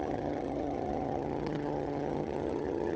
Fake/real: fake